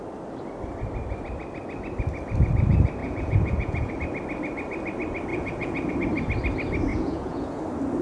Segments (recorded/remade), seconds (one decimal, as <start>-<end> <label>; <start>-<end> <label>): 0.0-3.0 recorded; 3.0-3.9 remade; 3.9-5.3 recorded; 5.3-5.9 remade; 5.9-6.9 recorded; 6.9-7.6 remade; 7.6-8.0 recorded